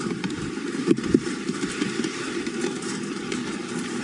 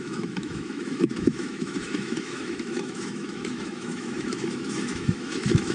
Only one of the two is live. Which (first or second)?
first